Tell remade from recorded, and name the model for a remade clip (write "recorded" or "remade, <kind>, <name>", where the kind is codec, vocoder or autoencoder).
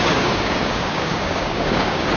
remade, codec, DAC